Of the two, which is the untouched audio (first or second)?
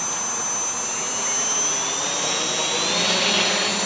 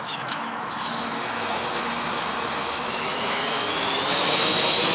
first